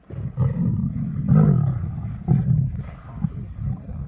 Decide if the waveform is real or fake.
real